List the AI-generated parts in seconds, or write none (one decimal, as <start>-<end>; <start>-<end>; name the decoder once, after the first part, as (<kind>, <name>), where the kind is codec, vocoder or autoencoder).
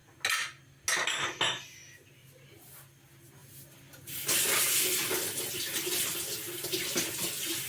none